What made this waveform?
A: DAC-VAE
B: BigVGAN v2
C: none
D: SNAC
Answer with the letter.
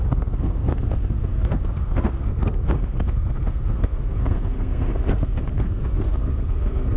D